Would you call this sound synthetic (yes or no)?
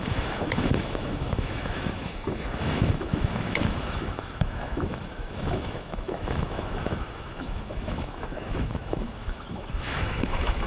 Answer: yes